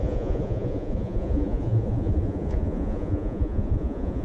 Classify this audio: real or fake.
fake